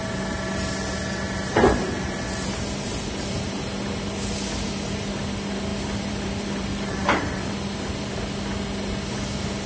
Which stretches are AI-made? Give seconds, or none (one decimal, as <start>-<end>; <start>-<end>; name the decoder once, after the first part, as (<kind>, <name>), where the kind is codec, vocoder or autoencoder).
5.7-7.5 (vocoder, BigVGAN v2)